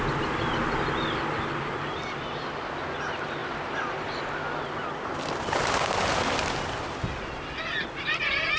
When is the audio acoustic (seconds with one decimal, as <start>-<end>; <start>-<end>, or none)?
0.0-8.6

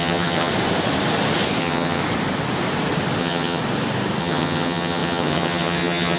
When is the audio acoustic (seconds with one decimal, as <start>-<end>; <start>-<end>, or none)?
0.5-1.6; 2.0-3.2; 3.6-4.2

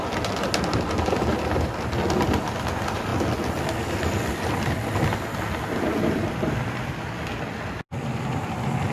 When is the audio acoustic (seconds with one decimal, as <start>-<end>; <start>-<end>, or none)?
0.0-8.9

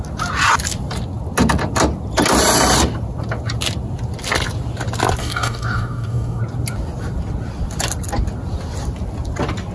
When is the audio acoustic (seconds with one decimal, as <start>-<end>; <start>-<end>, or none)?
0.0-5.2; 6.4-9.7

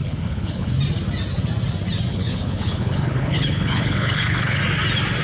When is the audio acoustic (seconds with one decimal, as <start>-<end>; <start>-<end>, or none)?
0.7-2.1; 4.6-5.2